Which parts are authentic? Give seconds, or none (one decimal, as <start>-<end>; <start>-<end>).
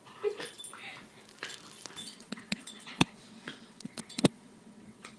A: 0.0-2.0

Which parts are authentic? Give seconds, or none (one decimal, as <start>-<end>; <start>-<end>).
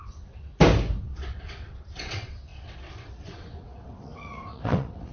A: 0.5-1.0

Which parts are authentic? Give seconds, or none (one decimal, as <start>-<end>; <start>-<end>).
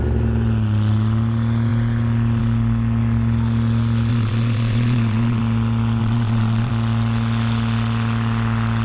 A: 0.0-4.1; 5.4-6.0; 6.7-8.8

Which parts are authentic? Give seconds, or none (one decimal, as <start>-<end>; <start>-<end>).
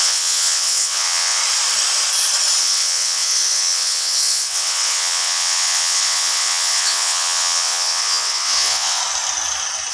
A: 1.4-2.6; 9.0-9.9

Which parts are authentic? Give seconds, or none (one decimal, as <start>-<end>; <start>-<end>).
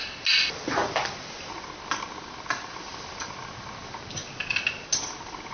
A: 0.0-5.5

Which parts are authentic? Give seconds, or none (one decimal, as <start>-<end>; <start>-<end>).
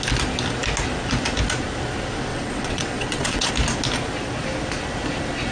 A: 0.0-2.3; 3.5-5.5